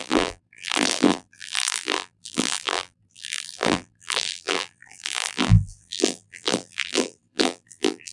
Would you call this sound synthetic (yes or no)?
yes